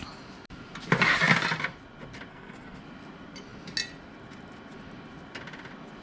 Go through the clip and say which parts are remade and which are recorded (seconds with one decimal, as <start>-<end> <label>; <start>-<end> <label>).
0.0-2.3 recorded; 2.3-2.8 remade; 2.8-6.0 recorded